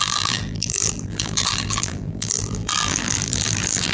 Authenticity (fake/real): fake